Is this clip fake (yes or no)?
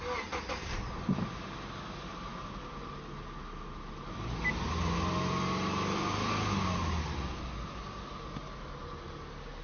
no